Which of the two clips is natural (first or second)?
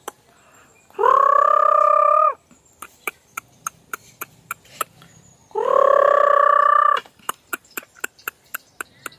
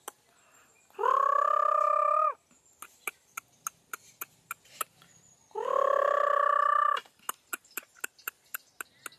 second